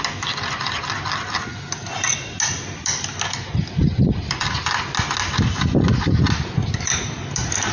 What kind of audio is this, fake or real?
real